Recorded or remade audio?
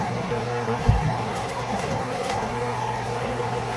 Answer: remade